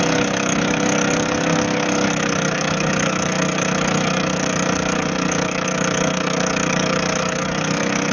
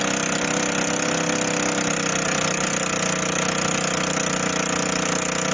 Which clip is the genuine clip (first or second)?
second